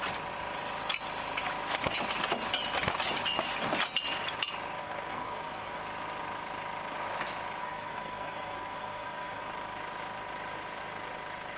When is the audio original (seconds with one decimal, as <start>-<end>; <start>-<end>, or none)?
0.0-4.8; 5.8-7.6; 9.4-11.6